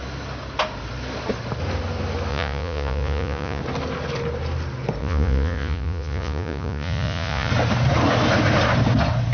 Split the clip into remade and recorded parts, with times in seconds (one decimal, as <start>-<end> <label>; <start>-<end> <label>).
0.0-2.3 recorded; 2.3-3.6 remade; 3.6-5.0 recorded; 5.0-7.5 remade; 7.5-9.3 recorded